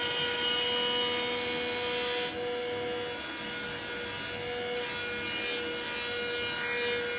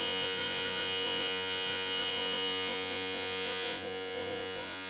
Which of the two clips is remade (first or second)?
second